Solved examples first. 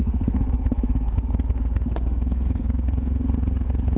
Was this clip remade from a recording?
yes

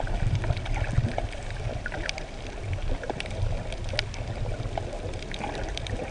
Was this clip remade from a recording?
no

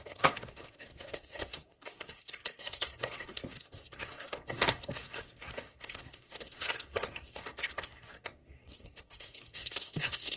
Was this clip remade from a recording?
yes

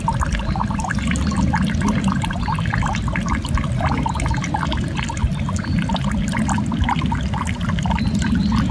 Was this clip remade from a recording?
no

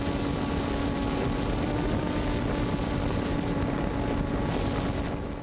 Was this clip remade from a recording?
no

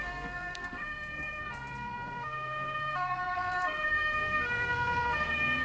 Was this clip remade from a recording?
yes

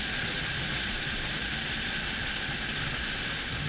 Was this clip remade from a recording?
no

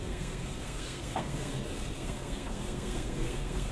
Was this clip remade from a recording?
yes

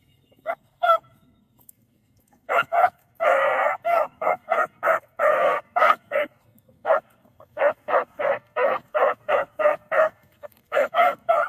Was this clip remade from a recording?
yes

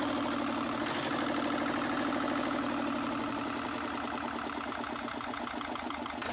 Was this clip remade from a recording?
no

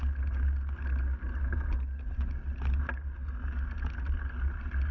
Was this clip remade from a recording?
no